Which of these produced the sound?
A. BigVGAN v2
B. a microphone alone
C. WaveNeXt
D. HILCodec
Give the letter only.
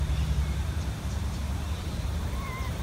A